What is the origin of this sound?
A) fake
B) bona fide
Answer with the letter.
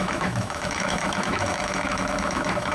A